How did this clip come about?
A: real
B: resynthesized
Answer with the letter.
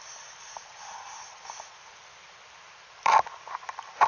A